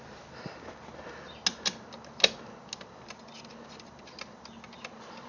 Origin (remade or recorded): recorded